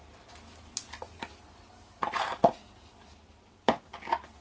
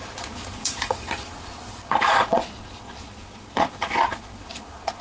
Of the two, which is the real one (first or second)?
first